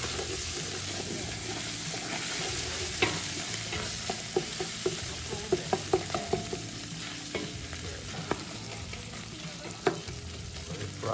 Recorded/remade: recorded